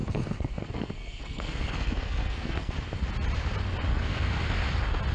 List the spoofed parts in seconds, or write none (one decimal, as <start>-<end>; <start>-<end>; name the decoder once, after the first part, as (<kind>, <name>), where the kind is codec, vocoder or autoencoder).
0.0-2.7 (codec, SNAC); 3.9-4.4